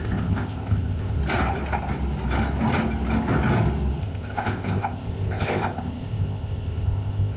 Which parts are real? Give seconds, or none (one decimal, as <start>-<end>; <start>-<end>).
1.2-4.0